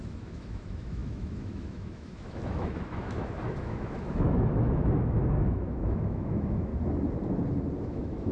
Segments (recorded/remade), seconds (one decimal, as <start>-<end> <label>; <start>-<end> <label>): 0.0-6.7 remade; 6.7-7.8 recorded; 7.8-8.3 remade